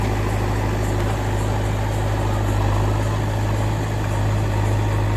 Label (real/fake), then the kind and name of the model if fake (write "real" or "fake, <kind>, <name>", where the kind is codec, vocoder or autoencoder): real